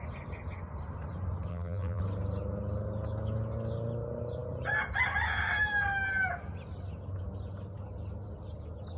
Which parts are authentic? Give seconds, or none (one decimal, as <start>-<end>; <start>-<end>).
0.0-1.5; 2.0-9.0